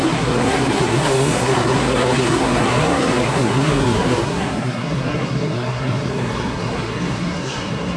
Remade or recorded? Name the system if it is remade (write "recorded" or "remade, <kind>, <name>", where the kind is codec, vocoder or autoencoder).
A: remade, codec, SNAC